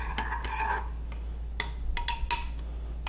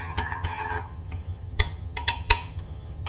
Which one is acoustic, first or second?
first